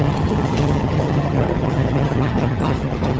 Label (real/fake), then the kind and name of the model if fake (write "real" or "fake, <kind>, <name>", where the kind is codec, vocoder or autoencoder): fake, vocoder, HiFi-GAN